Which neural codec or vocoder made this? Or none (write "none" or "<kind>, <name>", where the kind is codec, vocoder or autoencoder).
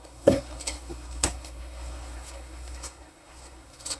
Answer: codec, SNAC